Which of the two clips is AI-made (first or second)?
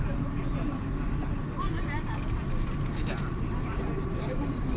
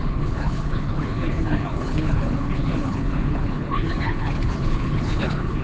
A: second